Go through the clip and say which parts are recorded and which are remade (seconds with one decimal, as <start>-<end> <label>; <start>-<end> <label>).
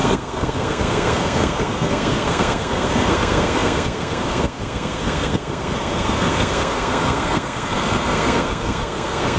0.0-9.4 remade